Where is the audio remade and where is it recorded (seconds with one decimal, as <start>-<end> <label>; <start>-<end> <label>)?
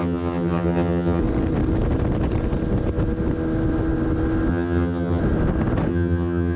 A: 0.0-1.2 remade; 1.2-4.5 recorded; 4.5-5.2 remade; 5.2-5.9 recorded; 5.9-6.6 remade